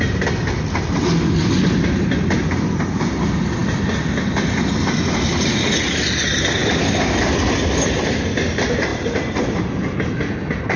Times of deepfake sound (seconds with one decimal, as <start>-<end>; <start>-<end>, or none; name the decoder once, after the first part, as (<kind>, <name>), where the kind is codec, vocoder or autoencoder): 6.6-7.5 (vocoder, BigVGAN v2); 8.9-9.6